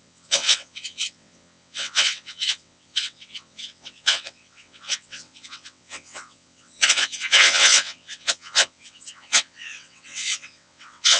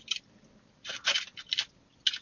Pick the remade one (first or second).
first